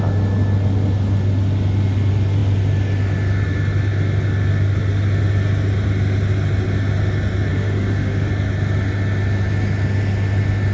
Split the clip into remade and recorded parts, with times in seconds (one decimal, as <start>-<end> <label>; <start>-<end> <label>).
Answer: 0.0-7.5 recorded; 7.5-8.3 remade; 8.3-10.7 recorded